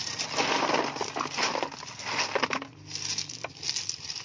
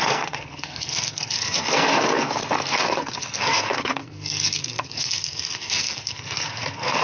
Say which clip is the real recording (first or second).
first